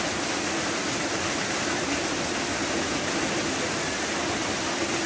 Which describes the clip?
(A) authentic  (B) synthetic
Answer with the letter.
A